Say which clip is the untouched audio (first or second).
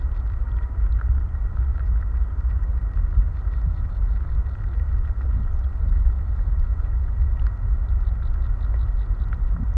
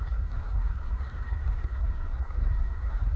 first